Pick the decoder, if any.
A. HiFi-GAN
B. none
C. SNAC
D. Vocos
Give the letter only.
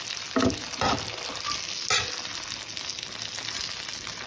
B